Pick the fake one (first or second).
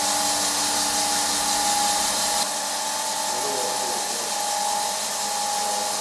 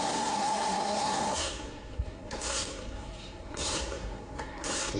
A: second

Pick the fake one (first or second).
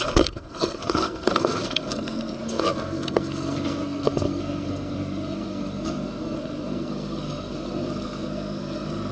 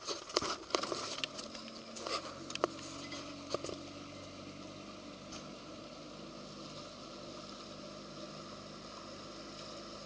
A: first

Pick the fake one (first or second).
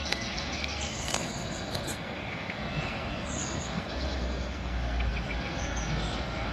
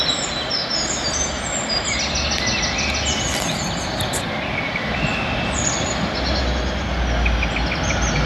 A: first